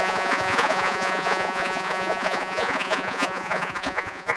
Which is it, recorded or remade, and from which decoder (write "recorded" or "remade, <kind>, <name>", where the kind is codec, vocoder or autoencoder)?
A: remade, vocoder, Vocos